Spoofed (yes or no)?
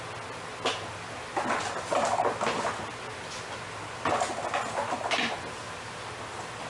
no